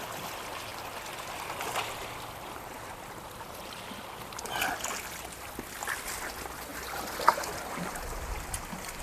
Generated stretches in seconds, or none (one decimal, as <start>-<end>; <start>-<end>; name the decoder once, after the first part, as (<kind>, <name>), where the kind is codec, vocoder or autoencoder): none